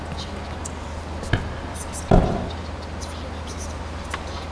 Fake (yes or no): no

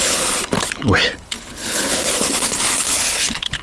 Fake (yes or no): yes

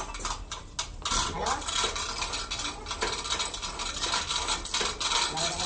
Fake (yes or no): no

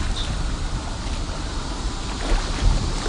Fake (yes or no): no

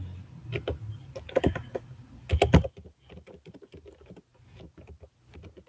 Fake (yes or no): no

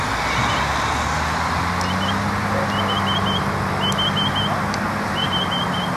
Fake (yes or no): no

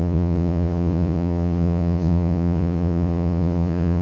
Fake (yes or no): yes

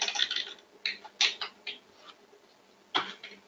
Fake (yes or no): no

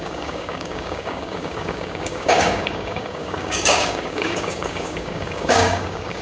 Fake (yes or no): yes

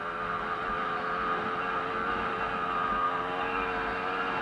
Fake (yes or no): no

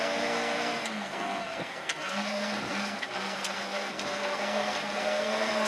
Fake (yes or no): yes